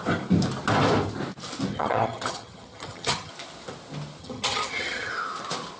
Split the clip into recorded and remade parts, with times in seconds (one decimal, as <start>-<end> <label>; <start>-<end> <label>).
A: 0.0-1.7 recorded; 1.7-3.3 remade; 3.3-4.2 recorded; 4.2-5.1 remade; 5.1-5.8 recorded

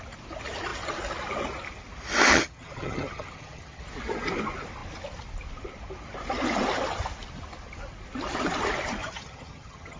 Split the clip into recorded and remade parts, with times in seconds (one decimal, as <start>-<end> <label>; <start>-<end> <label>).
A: 0.0-2.3 recorded; 2.3-3.8 remade; 3.8-9.0 recorded; 9.0-10.0 remade

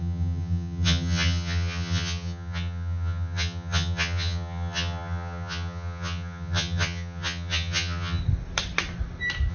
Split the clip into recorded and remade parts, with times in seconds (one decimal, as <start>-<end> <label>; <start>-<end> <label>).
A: 0.0-8.2 remade; 8.2-9.5 recorded

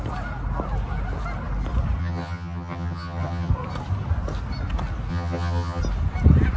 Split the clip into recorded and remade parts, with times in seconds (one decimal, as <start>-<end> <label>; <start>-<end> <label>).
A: 0.0-2.0 recorded; 2.0-3.5 remade; 3.5-5.1 recorded; 5.1-5.8 remade; 5.8-6.6 recorded